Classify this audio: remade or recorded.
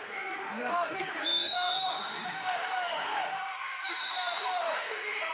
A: remade